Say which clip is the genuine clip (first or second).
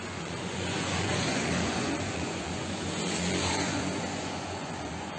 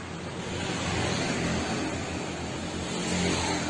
second